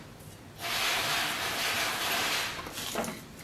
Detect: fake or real real